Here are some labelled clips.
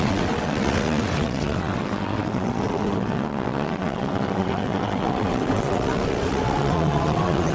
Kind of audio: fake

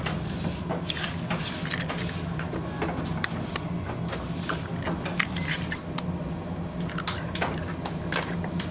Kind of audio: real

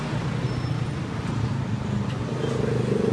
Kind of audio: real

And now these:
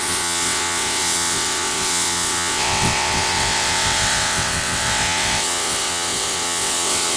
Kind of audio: fake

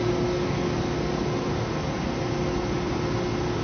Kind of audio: real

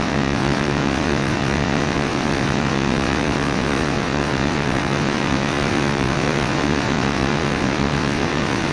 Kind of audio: fake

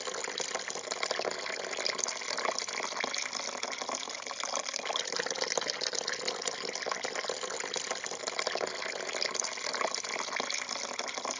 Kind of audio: real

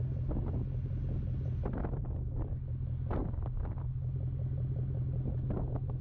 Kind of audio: real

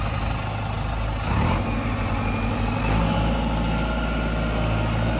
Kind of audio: real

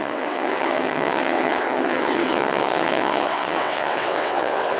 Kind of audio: fake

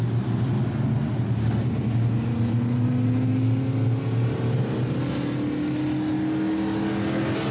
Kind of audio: real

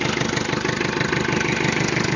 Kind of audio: real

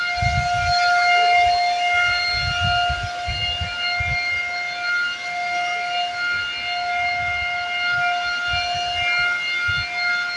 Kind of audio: real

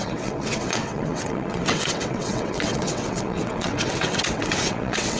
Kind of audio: fake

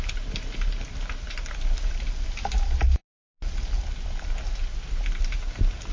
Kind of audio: real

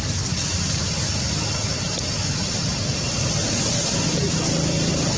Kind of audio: real